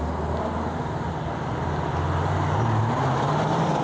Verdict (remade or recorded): recorded